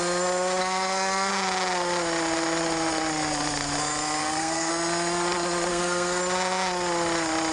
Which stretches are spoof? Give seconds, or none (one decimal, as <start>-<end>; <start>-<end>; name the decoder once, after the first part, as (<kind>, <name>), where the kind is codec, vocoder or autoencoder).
0.6-1.3 (codec, SNAC); 4.2-4.7; 5.7-6.2